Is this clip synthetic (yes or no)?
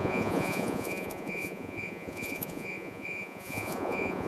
yes